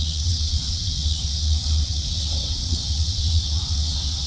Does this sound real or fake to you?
fake